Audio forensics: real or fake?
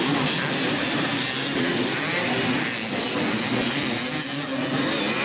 real